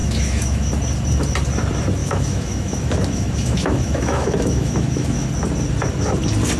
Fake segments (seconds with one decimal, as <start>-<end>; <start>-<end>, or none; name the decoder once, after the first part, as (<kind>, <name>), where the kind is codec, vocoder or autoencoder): 0.0-0.7 (autoencoder, DAC-VAE); 2.0-5.3